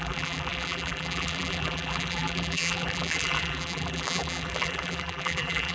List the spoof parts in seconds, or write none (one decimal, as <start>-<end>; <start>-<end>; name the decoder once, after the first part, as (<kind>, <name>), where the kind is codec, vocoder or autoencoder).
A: 0.0-5.7 (vocoder, BigVGAN v2)